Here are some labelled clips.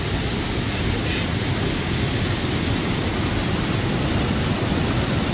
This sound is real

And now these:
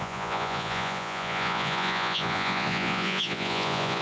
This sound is fake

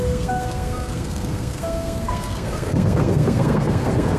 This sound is fake